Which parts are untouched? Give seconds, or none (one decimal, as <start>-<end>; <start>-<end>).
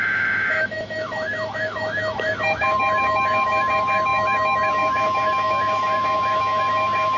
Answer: none